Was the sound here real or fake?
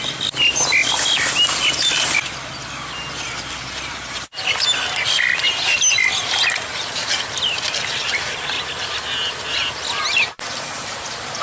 real